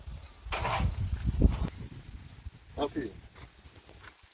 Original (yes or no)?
yes